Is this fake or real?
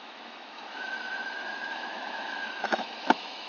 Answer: fake